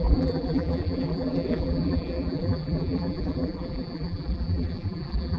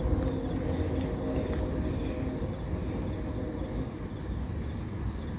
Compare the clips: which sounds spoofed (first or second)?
first